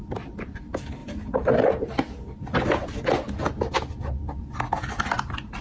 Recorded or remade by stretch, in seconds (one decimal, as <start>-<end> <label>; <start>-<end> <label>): 0.0-1.0 recorded; 1.0-1.6 remade; 1.6-5.6 recorded